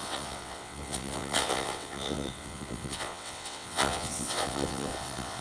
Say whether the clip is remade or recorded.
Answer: remade